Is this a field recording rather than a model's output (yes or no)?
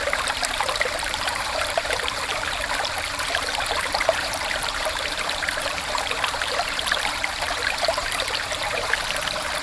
no